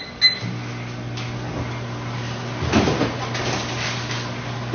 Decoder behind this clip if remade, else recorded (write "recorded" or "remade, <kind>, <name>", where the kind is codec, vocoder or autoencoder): recorded